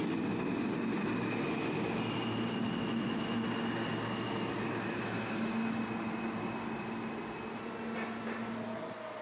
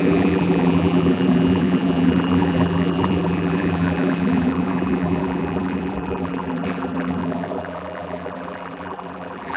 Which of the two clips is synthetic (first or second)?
second